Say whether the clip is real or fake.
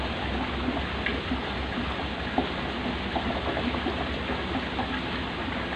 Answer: real